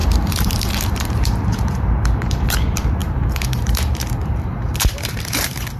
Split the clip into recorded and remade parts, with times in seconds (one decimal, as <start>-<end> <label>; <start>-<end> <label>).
0.0-5.8 remade